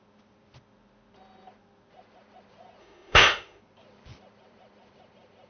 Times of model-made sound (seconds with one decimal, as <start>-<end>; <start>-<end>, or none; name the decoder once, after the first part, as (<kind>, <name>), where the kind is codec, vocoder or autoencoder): 2.8-3.6 (autoencoder, DAC-VAE)